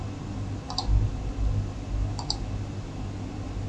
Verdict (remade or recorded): recorded